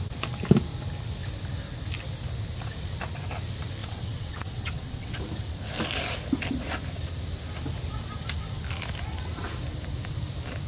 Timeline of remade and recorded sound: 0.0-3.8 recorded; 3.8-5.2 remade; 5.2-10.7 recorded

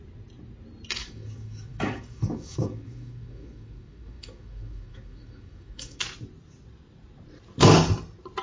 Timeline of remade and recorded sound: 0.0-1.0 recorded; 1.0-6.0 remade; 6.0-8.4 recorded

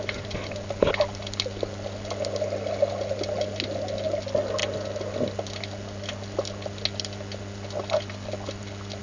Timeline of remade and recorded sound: 0.0-9.0 recorded